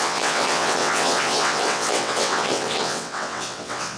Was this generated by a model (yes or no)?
yes